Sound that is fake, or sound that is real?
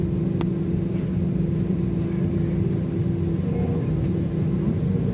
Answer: real